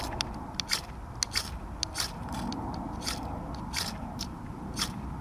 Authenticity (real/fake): real